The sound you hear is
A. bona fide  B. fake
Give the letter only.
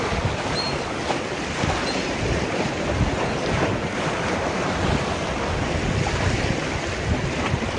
A